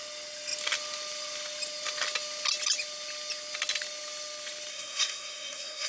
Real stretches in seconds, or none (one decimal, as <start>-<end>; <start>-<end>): 0.0-4.7